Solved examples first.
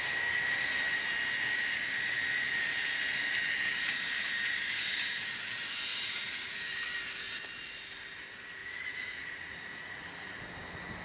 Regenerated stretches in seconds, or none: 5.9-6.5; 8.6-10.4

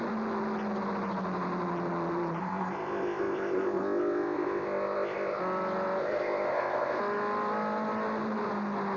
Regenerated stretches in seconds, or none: 2.4-5.4; 6.0-7.0

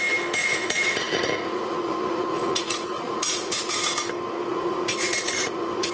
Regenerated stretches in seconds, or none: 0.4-3.7; 4.5-5.9

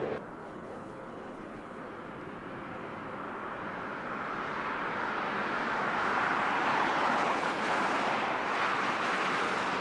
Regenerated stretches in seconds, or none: 0.4-1.8; 6.7-7.6

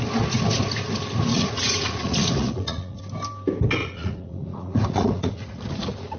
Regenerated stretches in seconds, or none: 1.3-3.0; 3.8-6.2

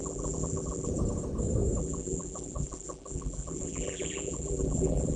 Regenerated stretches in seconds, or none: 0.0-0.9; 1.8-5.2